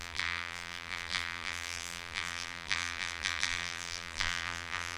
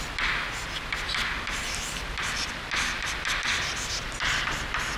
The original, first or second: second